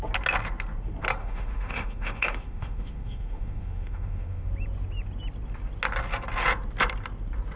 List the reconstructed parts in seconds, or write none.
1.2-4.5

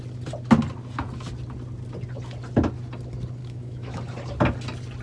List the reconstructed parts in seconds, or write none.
3.4-4.0